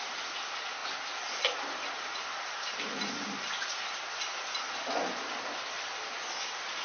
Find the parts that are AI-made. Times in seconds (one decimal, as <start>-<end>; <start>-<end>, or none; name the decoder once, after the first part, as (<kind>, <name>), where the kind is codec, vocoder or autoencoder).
none